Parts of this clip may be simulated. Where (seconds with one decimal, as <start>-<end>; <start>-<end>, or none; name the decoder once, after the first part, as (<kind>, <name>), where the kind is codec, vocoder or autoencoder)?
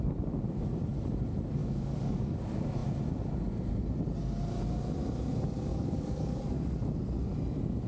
1.6-2.4 (codec, DAC); 5.7-6.4